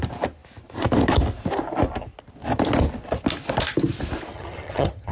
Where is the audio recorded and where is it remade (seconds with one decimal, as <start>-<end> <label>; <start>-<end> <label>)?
0.0-4.3 recorded; 4.3-5.1 remade

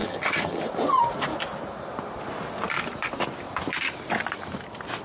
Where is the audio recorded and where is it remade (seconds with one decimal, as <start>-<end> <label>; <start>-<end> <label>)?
0.0-0.6 remade; 0.6-5.0 recorded

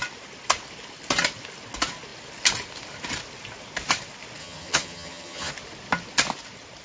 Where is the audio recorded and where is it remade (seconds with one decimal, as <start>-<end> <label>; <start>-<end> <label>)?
0.0-4.4 recorded; 4.4-5.5 remade; 5.5-6.8 recorded